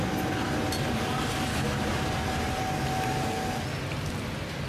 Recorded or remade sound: recorded